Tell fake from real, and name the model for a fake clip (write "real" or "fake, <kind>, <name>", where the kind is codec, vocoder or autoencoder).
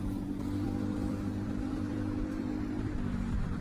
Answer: fake, vocoder, BigVGAN v2